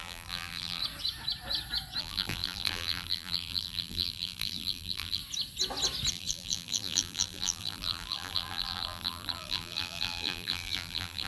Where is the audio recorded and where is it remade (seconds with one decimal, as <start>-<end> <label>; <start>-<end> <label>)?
0.0-0.8 remade; 0.8-2.0 recorded; 2.0-5.2 remade; 5.2-6.1 recorded; 6.1-11.3 remade